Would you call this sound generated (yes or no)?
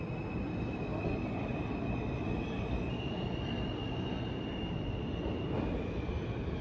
no